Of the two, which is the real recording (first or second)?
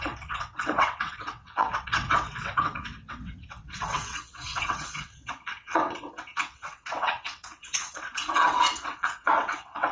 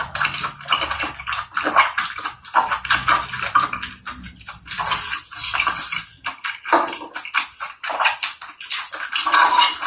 second